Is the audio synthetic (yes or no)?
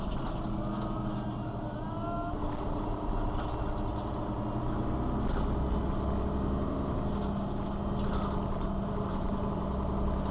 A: no